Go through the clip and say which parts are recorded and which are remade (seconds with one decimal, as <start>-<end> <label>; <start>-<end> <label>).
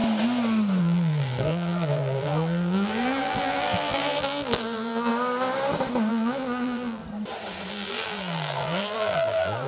0.0-0.8 recorded; 0.8-5.1 remade; 5.1-6.1 recorded; 6.1-7.0 remade; 7.0-7.7 recorded; 7.7-9.7 remade